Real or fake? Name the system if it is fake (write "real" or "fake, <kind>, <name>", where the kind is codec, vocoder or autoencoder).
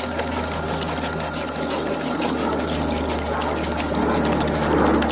real